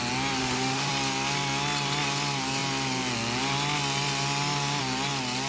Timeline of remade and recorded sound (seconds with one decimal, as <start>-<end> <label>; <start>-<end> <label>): 0.0-0.4 recorded; 0.4-0.9 remade; 0.9-5.5 recorded